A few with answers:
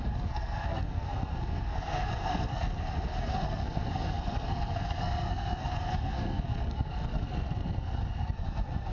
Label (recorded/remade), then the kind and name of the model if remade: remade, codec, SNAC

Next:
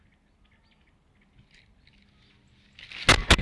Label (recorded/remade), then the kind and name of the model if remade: recorded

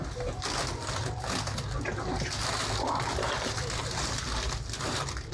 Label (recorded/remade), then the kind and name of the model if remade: recorded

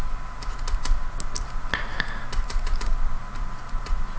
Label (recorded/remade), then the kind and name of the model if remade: recorded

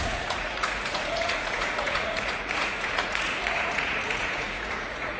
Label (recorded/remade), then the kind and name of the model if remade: remade, vocoder, Vocos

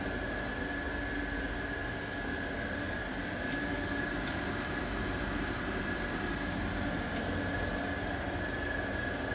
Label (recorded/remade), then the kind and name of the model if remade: recorded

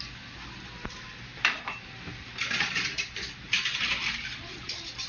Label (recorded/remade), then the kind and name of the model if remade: remade, vocoder, BigVGAN v2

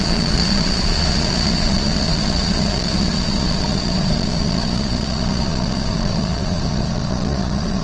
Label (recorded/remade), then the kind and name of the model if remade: remade, vocoder, Vocos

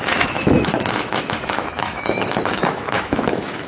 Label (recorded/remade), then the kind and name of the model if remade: remade, autoencoder, DAC-VAE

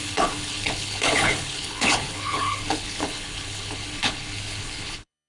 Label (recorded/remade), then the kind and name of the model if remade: remade, codec, HILCodec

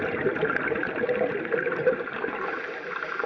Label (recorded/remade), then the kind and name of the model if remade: recorded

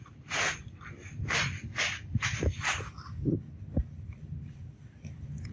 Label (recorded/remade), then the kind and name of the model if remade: remade, vocoder, BigVGAN v2